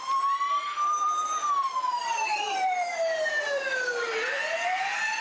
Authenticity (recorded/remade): remade